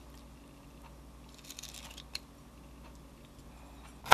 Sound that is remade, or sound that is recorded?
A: recorded